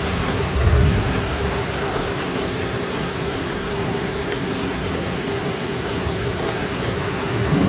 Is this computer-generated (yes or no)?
yes